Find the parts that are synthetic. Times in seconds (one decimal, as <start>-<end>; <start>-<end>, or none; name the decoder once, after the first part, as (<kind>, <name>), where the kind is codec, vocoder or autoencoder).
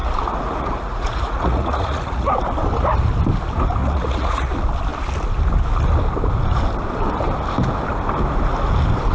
0.0-2.3 (vocoder, Vocos); 3.8-4.5